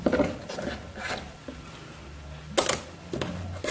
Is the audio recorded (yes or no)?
yes